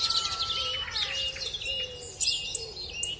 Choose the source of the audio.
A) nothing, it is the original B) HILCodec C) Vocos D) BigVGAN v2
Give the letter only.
A